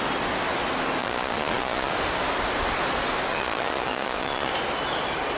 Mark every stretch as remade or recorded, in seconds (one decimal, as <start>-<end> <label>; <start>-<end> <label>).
0.0-1.0 recorded; 1.0-1.9 remade; 1.9-3.3 recorded; 3.3-4.5 remade; 4.5-5.4 recorded